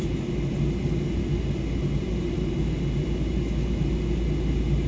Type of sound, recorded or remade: recorded